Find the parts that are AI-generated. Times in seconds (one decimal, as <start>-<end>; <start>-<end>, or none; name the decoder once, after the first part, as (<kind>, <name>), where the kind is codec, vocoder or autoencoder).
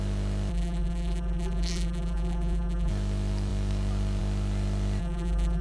0.5-2.9 (vocoder, BigVGAN v2); 5.0-5.6